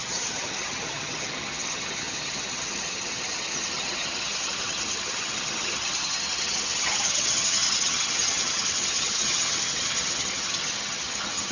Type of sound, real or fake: fake